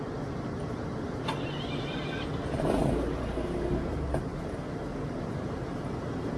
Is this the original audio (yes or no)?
yes